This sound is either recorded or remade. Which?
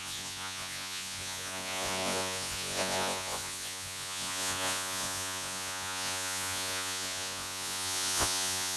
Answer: remade